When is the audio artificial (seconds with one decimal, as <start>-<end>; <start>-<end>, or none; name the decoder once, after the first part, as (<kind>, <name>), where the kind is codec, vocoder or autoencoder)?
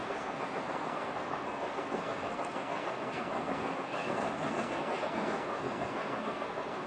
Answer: 0.0-6.9 (codec, SNAC)